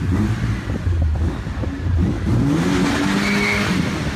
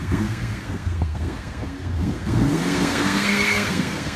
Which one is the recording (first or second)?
first